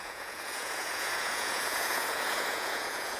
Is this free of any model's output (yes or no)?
no